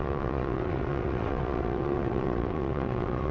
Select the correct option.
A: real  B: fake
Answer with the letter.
B